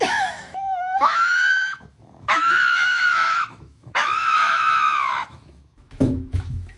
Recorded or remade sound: remade